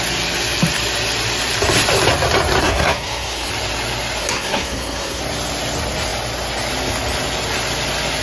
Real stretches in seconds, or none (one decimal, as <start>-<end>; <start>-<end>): 0.0-2.6; 3.5-4.2; 5.2-8.2